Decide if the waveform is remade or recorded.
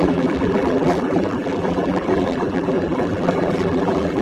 remade